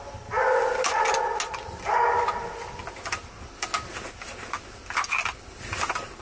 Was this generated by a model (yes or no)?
no